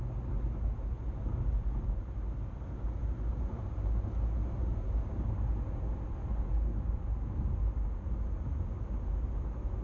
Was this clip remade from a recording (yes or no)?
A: no